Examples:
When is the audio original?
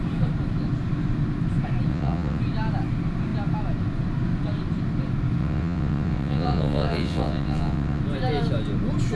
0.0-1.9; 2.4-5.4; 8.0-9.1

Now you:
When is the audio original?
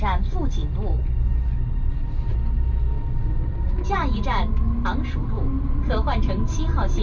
0.0-7.0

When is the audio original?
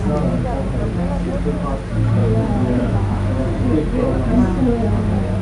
0.0-2.2; 3.4-5.4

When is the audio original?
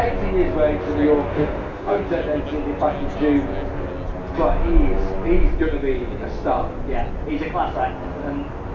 0.0-1.3; 2.0-8.7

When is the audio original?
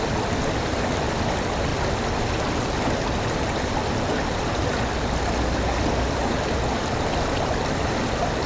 0.0-8.5